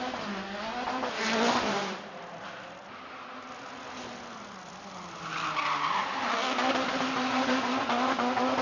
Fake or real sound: real